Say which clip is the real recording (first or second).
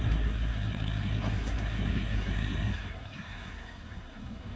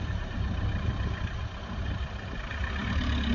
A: second